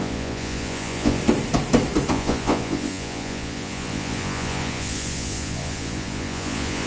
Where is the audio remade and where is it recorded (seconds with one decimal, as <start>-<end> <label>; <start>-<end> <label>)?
0.0-1.2 remade; 1.2-2.1 recorded; 2.1-6.9 remade